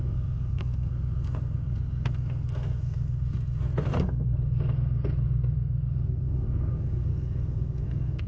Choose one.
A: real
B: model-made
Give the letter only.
B